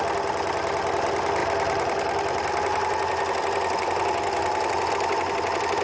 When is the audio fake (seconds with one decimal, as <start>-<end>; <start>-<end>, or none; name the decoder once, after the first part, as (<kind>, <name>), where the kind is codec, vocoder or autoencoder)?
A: none